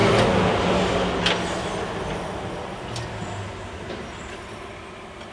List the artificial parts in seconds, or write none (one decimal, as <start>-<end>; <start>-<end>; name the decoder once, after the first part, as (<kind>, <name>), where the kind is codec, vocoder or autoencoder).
none

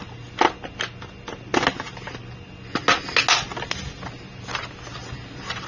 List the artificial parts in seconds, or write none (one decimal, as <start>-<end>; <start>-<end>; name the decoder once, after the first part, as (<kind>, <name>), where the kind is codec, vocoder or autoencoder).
none